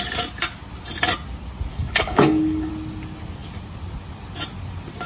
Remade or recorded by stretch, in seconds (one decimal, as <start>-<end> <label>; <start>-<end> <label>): 0.0-1.7 recorded; 1.7-2.7 remade; 2.7-5.1 recorded